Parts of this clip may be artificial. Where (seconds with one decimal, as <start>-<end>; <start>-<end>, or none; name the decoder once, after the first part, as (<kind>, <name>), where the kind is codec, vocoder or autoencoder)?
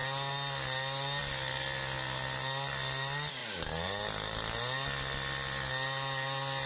none